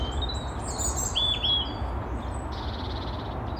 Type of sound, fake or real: real